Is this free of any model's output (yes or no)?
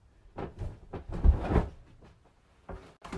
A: yes